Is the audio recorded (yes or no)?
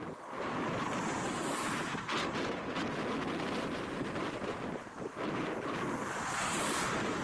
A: yes